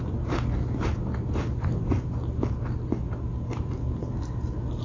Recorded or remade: recorded